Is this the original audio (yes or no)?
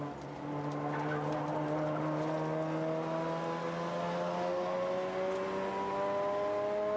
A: yes